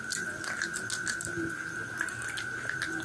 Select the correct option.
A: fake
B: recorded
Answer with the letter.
B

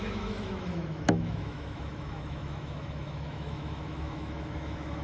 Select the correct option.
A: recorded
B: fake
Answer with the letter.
B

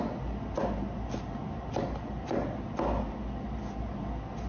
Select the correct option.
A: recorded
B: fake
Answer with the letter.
A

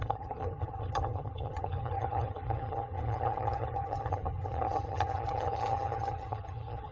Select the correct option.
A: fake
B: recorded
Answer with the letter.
A